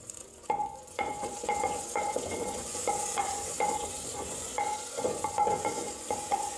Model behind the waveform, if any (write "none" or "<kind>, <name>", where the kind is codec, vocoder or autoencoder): vocoder, Vocos